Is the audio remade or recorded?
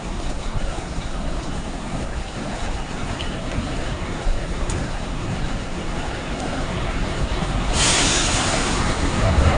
remade